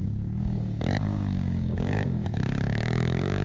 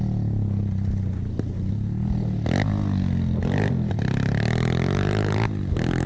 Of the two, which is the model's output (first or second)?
first